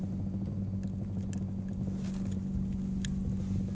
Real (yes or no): yes